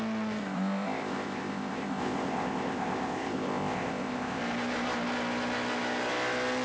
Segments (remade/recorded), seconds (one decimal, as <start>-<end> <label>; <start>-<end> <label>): 0.0-0.4 recorded; 0.4-4.4 remade; 4.4-6.6 recorded